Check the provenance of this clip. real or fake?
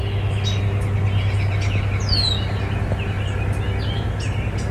real